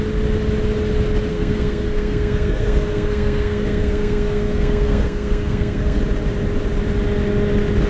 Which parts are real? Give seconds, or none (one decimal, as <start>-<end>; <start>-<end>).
0.0-1.3; 6.0-7.9